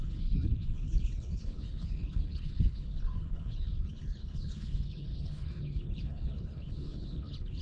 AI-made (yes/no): yes